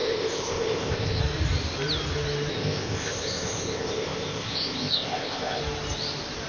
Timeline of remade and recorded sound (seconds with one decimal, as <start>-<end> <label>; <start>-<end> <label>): 0.0-1.2 remade; 1.2-2.5 recorded; 2.5-5.6 remade; 5.6-6.5 recorded